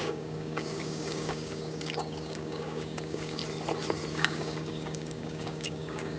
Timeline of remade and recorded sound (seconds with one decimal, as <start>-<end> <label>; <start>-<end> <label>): 0.0-3.4 remade; 3.4-4.1 recorded; 4.1-6.2 remade